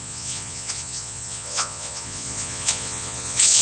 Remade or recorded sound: remade